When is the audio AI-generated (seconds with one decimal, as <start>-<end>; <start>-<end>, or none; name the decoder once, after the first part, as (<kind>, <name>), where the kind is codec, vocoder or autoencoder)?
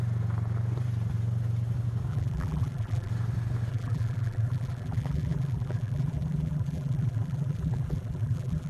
2.1-3.1 (vocoder, BigVGAN v2); 3.7-8.7